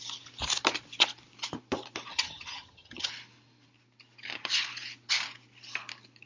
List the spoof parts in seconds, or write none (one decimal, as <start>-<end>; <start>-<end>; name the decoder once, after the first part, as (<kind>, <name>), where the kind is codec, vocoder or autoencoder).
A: 2.1-3.1 (vocoder, HiFi-GAN)